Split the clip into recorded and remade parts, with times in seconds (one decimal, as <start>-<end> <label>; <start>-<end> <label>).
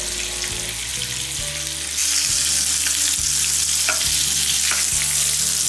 0.0-5.7 recorded